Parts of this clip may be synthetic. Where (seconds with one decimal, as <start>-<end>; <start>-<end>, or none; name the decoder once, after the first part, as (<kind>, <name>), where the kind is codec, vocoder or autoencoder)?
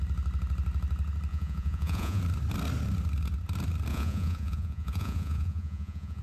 1.3-2.2 (vocoder, Vocos); 3.9-6.2